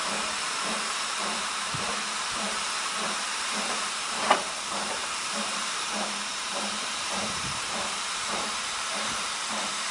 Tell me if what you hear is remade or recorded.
remade